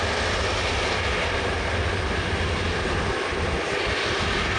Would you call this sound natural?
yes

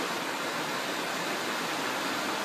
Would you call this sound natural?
yes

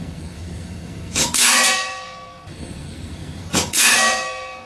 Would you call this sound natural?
no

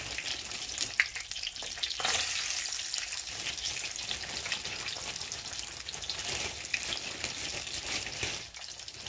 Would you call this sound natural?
yes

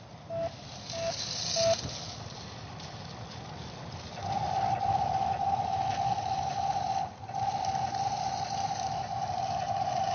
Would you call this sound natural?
yes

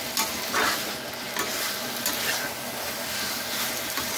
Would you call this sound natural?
yes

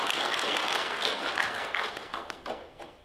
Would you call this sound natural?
no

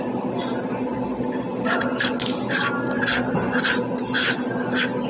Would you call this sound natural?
yes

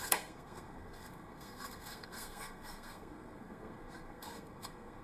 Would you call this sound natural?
no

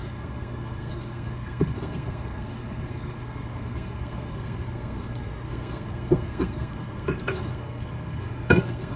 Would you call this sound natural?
no